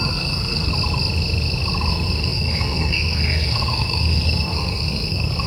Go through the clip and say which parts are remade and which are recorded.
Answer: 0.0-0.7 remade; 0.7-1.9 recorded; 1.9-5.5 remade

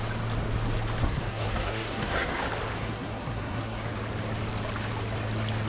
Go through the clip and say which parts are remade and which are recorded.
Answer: 0.0-1.0 recorded; 1.0-2.4 remade; 2.4-2.8 recorded; 2.8-3.9 remade; 3.9-5.7 recorded

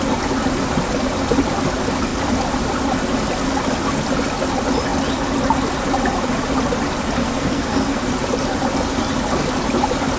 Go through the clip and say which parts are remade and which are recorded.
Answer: 0.0-7.2 recorded; 7.2-8.0 remade; 8.0-10.2 recorded

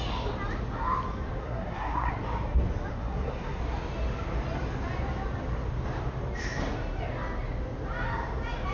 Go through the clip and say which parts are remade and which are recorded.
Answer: 0.0-1.4 recorded; 1.4-2.1 remade; 2.1-2.9 recorded; 2.9-3.6 remade; 3.6-8.7 recorded

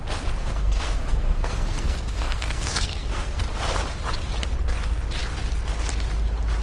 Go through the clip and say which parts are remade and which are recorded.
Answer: 0.0-0.4 recorded; 0.4-3.4 remade; 3.4-6.6 recorded

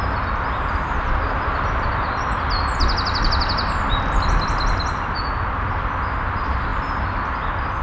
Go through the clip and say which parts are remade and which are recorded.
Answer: 0.0-7.8 recorded

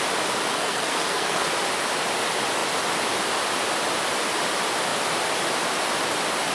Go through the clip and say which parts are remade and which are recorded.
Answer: 0.0-0.5 recorded; 0.5-1.5 remade; 1.5-6.5 recorded

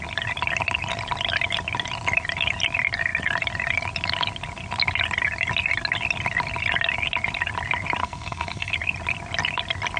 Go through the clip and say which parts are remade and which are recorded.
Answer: 0.0-8.0 recorded; 8.0-8.7 remade; 8.7-10.0 recorded